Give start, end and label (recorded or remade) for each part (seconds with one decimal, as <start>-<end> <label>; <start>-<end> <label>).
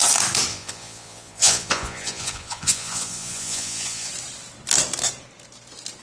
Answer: 0.0-0.5 recorded; 0.5-4.1 remade; 4.1-6.0 recorded